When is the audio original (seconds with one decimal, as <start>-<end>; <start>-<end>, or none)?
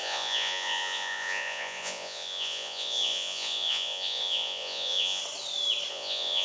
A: 5.2-5.9